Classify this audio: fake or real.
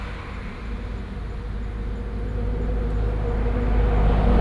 real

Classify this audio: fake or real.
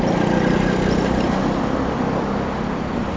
real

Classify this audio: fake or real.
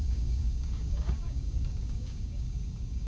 fake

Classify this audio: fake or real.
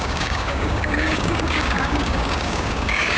fake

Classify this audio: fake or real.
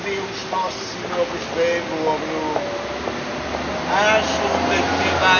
real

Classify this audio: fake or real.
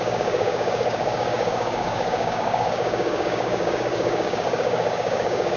fake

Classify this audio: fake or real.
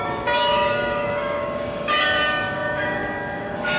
fake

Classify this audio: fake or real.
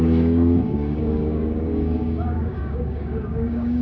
fake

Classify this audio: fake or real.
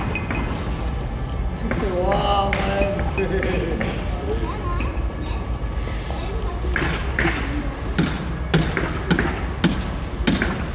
real